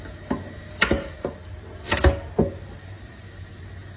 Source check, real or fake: real